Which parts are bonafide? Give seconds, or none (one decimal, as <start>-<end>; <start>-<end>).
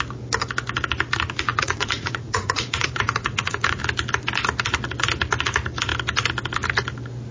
0.0-1.5; 3.8-7.3